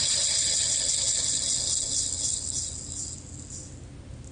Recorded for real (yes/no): yes